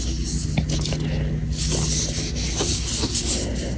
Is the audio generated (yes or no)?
no